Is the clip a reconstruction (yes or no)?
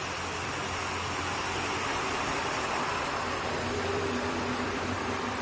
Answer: yes